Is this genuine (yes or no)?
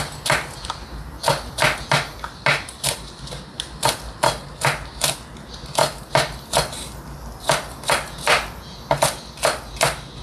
yes